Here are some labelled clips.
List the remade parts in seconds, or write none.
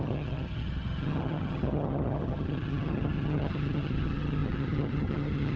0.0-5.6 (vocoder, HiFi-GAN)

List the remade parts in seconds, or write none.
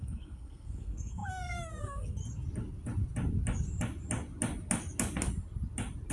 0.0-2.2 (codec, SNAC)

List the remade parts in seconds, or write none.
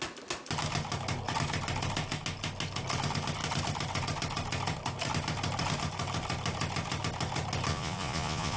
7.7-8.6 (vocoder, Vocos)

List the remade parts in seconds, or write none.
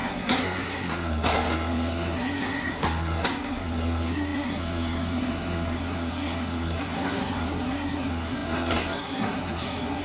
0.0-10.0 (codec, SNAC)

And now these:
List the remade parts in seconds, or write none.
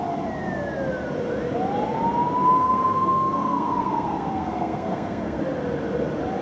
2.6-5.4 (codec, SNAC)